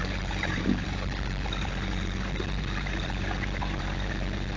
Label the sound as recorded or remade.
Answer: remade